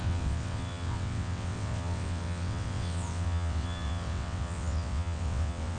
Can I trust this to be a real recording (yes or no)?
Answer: no